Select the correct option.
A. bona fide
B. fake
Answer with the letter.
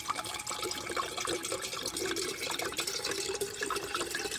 B